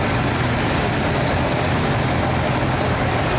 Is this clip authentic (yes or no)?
yes